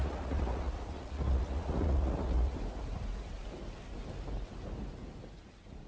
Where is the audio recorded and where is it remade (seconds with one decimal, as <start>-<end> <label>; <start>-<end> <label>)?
0.0-2.6 remade; 2.6-5.9 recorded